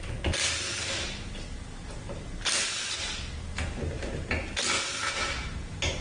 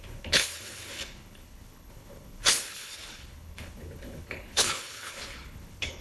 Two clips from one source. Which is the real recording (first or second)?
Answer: first